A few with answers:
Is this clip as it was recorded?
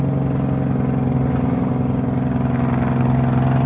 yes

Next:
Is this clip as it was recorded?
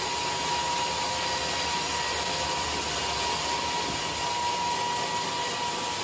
yes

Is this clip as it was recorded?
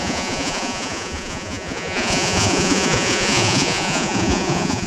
no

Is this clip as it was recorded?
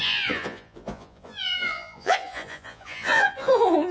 no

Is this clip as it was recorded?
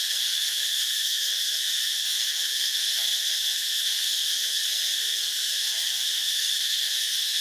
no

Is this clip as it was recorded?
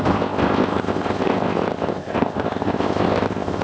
no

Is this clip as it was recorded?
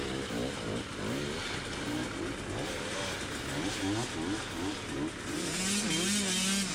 yes